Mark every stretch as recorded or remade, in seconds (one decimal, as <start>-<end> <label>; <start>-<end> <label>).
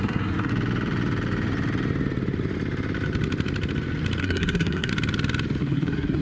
0.0-0.5 remade; 0.5-4.2 recorded; 4.2-4.9 remade; 4.9-5.6 recorded; 5.6-6.2 remade